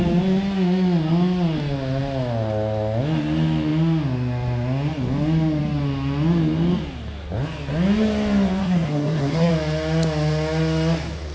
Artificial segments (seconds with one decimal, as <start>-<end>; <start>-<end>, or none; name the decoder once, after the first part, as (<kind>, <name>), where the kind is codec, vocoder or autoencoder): 8.6-9.5 (codec, SNAC)